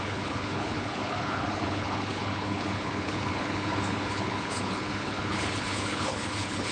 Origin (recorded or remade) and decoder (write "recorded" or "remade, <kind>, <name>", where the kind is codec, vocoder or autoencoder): remade, codec, HILCodec